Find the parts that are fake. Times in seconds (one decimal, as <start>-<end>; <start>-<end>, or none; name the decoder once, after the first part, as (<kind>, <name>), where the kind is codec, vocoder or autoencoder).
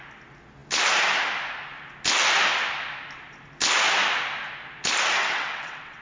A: 5.2-6.0 (vocoder, WaveNeXt)